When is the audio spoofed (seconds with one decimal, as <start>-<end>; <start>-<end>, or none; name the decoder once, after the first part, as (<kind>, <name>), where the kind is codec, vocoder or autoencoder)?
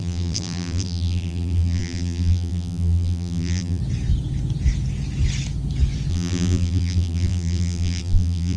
0.0-3.8 (vocoder, BigVGAN v2); 6.1-8.6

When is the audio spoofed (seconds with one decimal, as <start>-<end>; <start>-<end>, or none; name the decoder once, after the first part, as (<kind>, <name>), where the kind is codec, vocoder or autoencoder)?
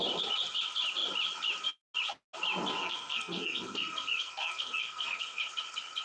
2.8-5.4 (codec, SNAC)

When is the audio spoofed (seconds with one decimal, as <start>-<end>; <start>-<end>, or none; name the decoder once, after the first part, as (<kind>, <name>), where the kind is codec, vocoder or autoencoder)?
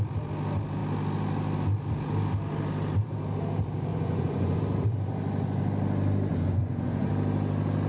3.9-4.6 (vocoder, Vocos); 6.3-7.1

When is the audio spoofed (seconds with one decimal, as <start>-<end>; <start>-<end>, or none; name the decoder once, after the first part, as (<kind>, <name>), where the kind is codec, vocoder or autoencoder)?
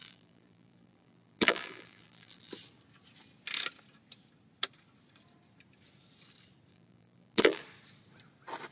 0.0-2.5 (vocoder, BigVGAN v2); 6.7-7.6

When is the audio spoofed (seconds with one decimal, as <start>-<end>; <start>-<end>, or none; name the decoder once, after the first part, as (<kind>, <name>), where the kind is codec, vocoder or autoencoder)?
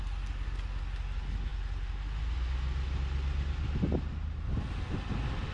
none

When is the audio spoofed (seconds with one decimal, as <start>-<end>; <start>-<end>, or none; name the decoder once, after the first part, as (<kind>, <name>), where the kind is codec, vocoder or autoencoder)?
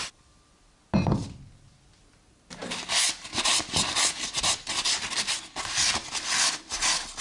none